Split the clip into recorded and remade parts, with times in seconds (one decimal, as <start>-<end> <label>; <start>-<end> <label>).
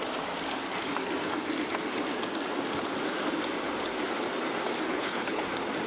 0.0-4.9 recorded; 4.9-5.4 remade; 5.4-5.9 recorded